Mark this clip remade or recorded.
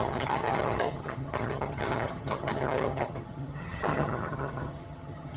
remade